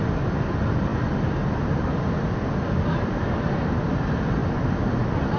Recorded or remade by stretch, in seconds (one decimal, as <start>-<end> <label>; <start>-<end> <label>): 0.0-5.4 recorded